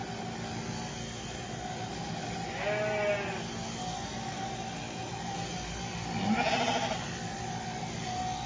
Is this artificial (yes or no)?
no